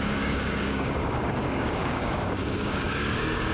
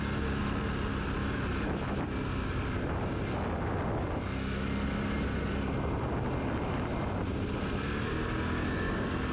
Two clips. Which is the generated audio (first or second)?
first